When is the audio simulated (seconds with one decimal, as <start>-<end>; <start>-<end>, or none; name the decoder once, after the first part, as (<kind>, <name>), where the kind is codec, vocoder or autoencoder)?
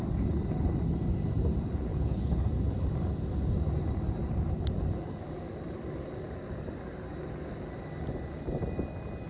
1.9-2.5 (codec, HILCodec)